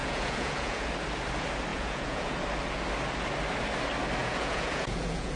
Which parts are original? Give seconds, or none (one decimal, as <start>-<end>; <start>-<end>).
0.9-1.7; 2.3-4.2